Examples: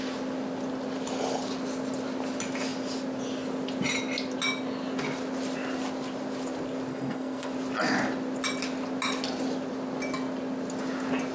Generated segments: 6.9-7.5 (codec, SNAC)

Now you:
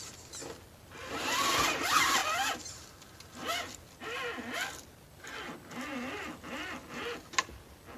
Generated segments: none

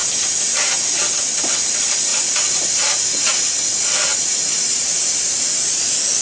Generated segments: 2.1-5.8 (vocoder, BigVGAN v2)